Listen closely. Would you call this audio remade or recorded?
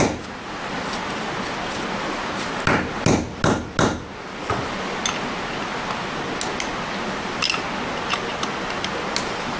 recorded